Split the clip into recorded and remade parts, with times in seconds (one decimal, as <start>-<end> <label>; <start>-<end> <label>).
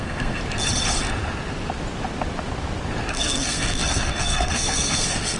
0.0-0.4 remade; 0.4-3.1 recorded; 3.1-5.4 remade